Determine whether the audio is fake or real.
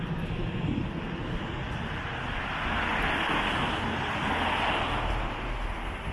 real